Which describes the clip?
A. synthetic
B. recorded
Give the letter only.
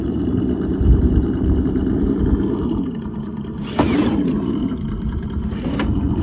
A